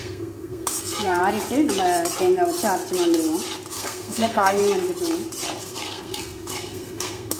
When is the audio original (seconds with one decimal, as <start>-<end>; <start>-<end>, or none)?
1.2-3.7; 4.6-5.6